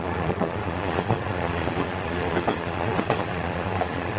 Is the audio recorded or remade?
remade